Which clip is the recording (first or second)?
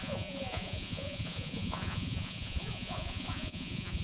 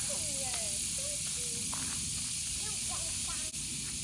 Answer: second